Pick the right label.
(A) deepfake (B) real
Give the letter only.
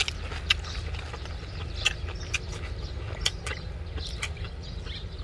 B